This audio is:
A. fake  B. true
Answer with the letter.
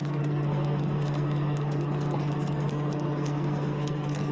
A